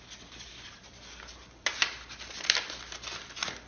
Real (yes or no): yes